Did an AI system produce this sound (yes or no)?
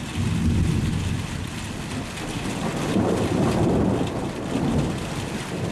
no